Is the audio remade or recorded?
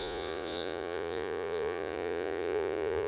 remade